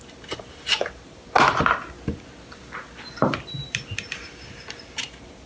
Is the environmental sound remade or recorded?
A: recorded